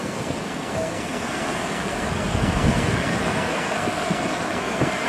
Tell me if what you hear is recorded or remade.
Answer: remade